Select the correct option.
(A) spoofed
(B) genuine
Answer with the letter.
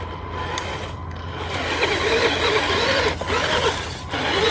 B